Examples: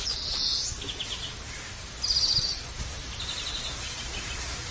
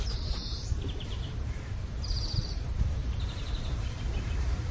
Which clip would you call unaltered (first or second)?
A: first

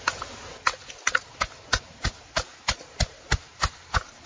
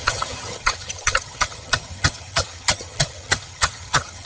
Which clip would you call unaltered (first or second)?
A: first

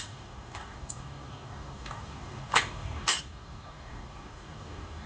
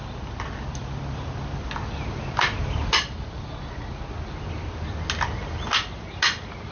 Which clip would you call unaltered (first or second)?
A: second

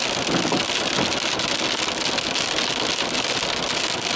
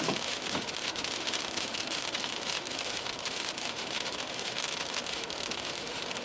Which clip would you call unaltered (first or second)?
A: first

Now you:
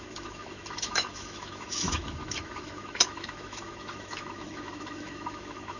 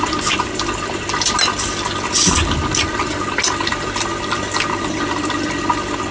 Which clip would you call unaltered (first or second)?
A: second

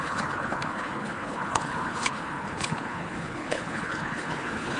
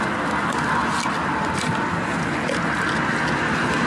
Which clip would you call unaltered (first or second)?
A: second